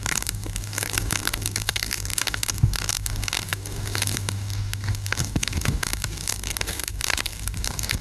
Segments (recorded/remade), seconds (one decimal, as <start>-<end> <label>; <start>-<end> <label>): 0.0-8.0 remade